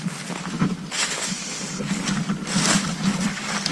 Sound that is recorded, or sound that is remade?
recorded